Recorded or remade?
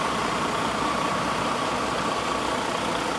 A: recorded